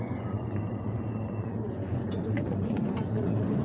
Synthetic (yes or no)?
yes